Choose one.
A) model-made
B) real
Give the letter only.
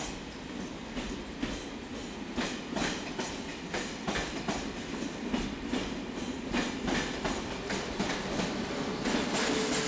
B